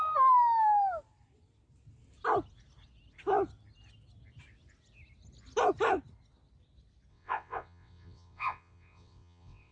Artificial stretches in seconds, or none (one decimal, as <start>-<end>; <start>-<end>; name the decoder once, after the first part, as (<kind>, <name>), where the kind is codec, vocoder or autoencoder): 7.1-9.7 (vocoder, WaveNeXt)